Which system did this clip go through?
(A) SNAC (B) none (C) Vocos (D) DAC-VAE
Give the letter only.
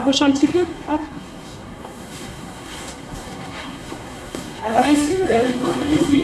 A